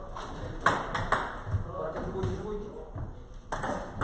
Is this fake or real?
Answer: real